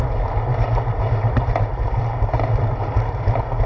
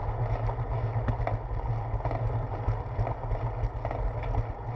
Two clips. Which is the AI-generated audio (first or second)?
first